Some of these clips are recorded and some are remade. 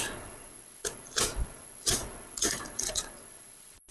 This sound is remade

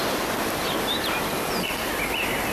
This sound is recorded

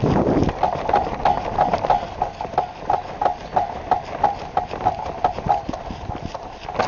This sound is recorded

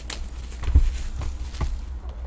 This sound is recorded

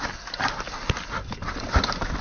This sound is recorded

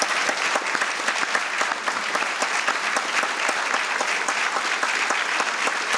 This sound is recorded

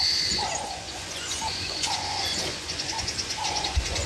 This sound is remade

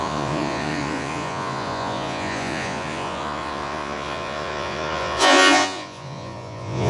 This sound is remade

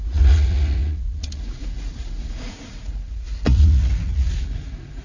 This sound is remade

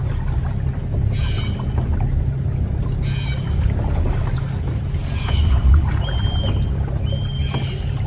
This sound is recorded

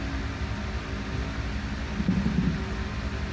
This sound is recorded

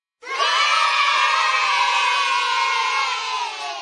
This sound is remade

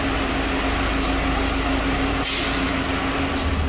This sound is recorded